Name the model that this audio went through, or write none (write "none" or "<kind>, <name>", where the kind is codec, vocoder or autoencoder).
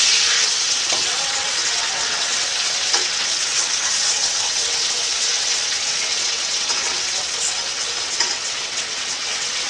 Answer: vocoder, WaveNeXt